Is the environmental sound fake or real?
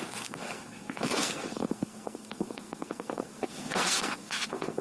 fake